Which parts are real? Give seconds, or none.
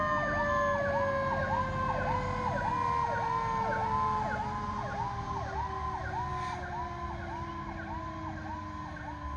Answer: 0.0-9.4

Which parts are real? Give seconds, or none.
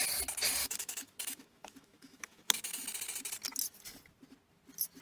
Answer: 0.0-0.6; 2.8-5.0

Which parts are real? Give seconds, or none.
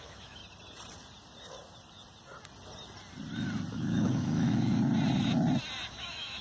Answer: 0.4-3.7; 4.7-5.9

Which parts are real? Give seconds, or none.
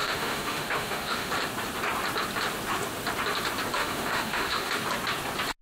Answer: 1.3-3.8; 4.7-5.6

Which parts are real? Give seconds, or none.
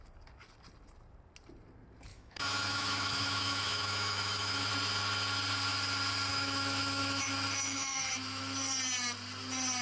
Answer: 0.0-2.1; 4.7-6.3; 7.3-7.7; 8.4-9.8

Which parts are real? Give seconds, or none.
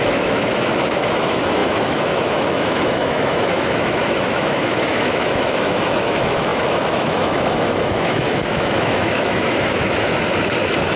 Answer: 10.1-11.0